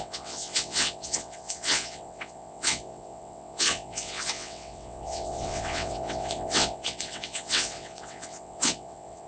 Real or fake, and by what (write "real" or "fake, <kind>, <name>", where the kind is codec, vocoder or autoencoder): fake, vocoder, WaveNeXt